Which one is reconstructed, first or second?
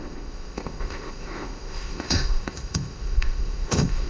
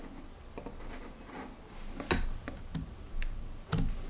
first